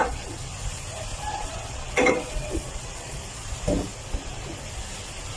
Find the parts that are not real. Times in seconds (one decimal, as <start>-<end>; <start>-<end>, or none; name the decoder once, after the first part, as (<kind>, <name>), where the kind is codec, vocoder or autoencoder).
0.0-0.5 (vocoder, WaveNeXt); 1.3-3.2